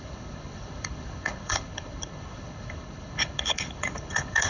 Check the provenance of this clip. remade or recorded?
remade